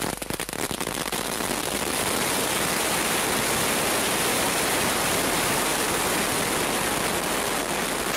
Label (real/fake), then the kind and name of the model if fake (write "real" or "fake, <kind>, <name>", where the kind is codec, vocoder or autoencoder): fake, vocoder, BigVGAN v2